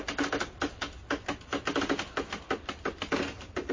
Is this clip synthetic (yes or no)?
no